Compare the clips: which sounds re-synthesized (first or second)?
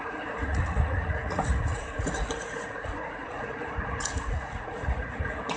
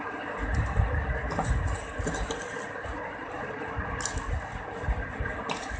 first